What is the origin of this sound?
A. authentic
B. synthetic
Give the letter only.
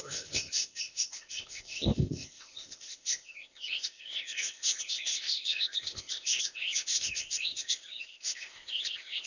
B